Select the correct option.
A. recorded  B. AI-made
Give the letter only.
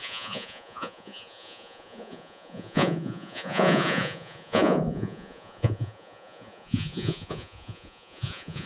B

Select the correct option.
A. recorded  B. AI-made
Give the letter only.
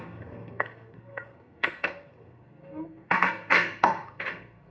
B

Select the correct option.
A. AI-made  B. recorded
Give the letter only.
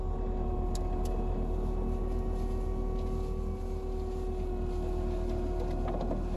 B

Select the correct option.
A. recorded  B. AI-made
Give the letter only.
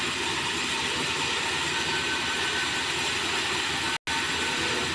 A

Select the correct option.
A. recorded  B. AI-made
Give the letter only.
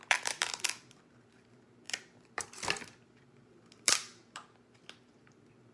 B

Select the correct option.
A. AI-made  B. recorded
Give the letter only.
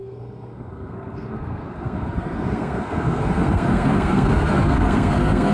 A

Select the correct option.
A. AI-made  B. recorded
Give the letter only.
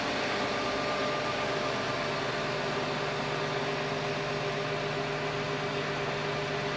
B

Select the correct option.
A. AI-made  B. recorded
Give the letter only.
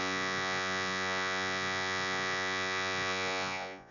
A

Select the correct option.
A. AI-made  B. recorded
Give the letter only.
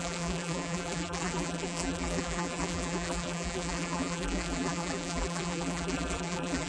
A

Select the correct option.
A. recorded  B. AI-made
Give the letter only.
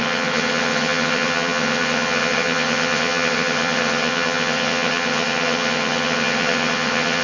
B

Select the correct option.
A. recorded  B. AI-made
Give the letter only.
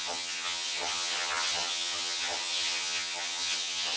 B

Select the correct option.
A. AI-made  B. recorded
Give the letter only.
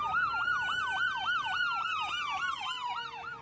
B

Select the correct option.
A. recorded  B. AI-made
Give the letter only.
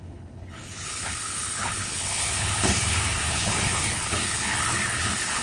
B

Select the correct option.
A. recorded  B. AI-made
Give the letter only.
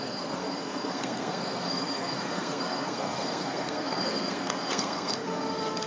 B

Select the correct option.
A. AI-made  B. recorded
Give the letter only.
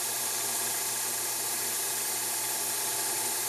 B